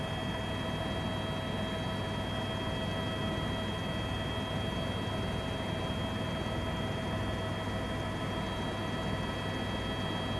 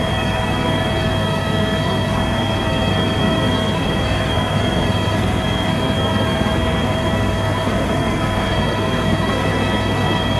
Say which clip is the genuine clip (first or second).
first